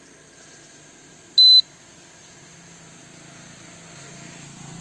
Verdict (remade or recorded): recorded